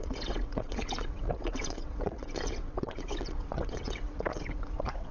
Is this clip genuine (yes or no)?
no